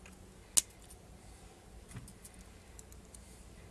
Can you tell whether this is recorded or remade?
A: recorded